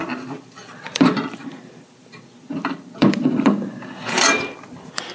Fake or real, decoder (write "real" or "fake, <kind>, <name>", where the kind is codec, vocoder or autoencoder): fake, vocoder, BigVGAN v2